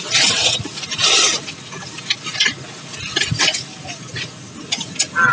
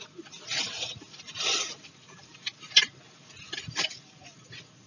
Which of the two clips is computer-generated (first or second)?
second